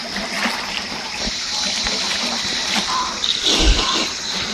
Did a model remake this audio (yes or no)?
yes